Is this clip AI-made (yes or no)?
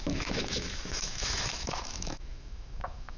yes